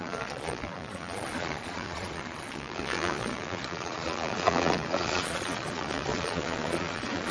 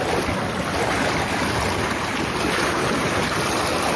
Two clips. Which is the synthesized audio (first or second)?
first